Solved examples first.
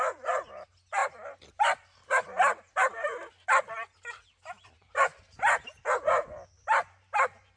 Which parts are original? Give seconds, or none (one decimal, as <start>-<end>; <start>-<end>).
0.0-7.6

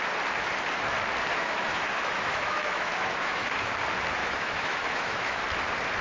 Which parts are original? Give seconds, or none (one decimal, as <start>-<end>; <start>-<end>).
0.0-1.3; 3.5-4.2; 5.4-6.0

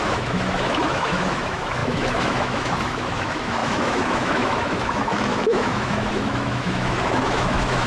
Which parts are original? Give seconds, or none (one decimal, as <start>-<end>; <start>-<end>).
none